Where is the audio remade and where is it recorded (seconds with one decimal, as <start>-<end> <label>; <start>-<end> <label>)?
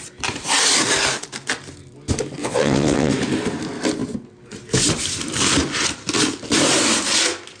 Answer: 0.0-2.4 recorded; 2.4-3.1 remade; 3.1-7.6 recorded